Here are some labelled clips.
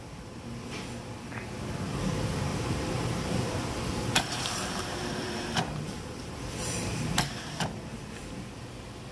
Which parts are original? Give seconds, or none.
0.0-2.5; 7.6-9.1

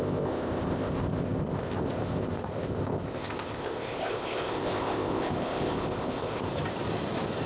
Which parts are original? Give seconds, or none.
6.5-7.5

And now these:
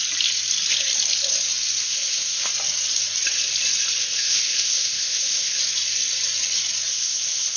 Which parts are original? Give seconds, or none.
0.0-1.8; 2.5-4.0; 5.6-6.9

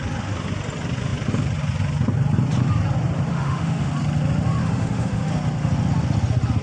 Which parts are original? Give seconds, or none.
0.0-3.3; 3.9-4.6; 5.3-6.6

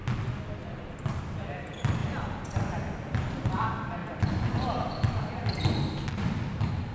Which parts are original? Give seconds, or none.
0.0-6.9